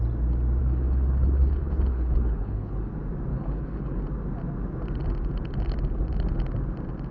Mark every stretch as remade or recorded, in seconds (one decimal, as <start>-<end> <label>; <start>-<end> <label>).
0.0-0.6 recorded; 0.6-2.9 remade; 2.9-3.3 recorded; 3.3-4.0 remade; 4.0-7.1 recorded

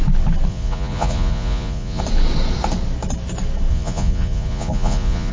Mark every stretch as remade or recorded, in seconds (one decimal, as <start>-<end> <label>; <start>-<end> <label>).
0.0-0.5 recorded; 0.5-2.0 remade; 2.0-3.7 recorded; 3.7-5.3 remade

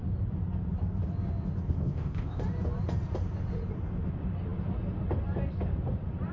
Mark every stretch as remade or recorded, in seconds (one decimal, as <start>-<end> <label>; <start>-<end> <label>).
0.0-1.7 recorded; 1.7-2.4 remade; 2.4-6.3 recorded

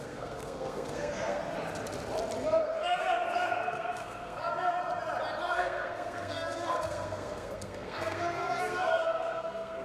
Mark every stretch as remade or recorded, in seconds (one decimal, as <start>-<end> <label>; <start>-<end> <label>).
0.0-1.4 remade; 1.4-2.6 recorded; 2.6-4.8 remade; 4.8-5.4 recorded; 5.4-9.8 remade